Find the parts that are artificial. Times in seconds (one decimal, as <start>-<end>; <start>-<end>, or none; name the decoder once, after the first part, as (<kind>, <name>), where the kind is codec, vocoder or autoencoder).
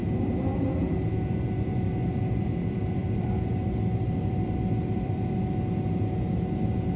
3.0-5.2 (vocoder, BigVGAN v2)